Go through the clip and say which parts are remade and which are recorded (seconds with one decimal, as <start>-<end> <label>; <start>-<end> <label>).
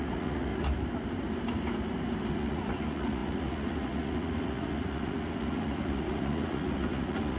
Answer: 0.0-0.5 remade; 0.5-2.3 recorded; 2.3-7.4 remade